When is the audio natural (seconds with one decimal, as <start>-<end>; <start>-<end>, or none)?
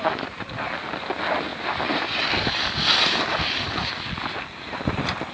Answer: 0.0-5.3